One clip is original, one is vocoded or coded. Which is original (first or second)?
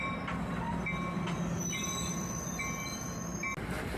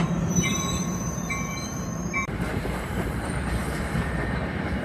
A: first